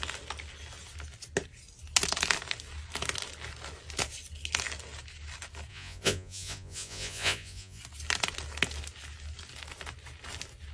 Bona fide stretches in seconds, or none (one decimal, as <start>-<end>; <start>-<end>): 0.0-5.7; 7.8-10.7